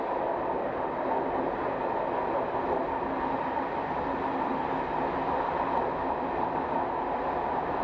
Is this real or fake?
real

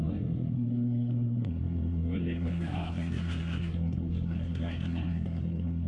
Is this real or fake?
fake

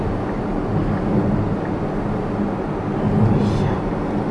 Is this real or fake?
real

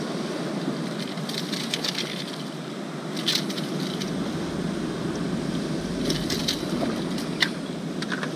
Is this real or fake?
real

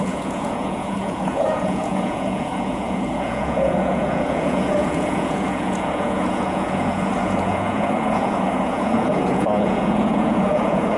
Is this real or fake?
fake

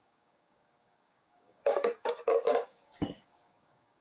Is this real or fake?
fake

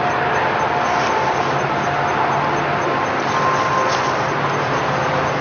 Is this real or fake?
real